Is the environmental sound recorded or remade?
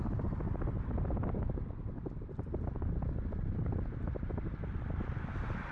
recorded